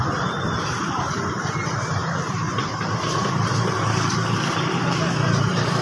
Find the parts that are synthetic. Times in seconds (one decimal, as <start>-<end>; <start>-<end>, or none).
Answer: 0.0-5.8